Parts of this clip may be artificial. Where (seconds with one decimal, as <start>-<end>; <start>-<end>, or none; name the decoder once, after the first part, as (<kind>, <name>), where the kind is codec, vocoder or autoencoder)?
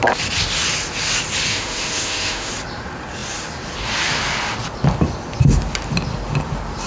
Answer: 1.5-2.5 (autoencoder, DAC-VAE)